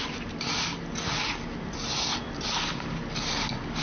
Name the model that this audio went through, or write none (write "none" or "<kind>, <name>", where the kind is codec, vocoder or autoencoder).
none